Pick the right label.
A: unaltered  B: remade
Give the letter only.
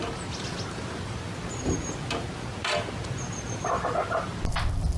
A